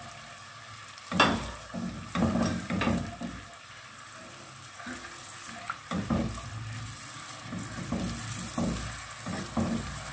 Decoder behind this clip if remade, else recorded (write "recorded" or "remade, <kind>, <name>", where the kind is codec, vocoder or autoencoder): recorded